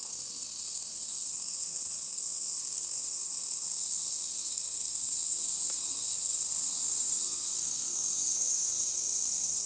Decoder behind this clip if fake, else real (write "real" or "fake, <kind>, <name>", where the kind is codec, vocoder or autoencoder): fake, codec, SNAC